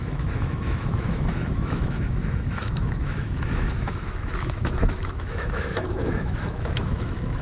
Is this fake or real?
fake